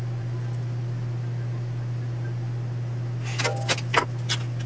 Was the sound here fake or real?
real